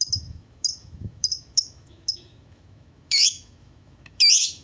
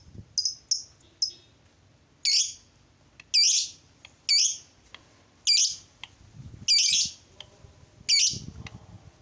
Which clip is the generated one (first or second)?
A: first